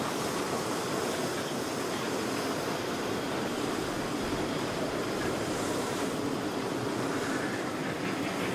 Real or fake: real